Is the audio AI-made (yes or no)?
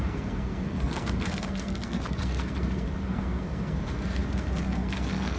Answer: yes